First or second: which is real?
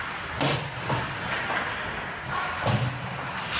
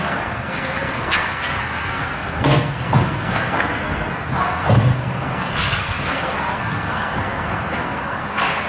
first